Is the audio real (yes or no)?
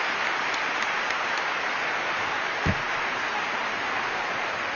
yes